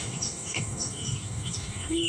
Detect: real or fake fake